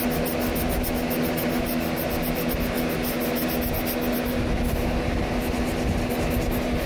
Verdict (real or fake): real